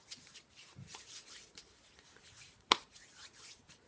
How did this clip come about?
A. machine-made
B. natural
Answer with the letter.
B